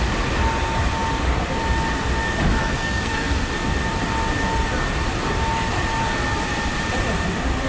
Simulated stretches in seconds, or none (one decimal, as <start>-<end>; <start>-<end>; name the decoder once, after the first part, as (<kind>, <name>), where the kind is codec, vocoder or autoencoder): 2.6-3.5 (codec, SNAC)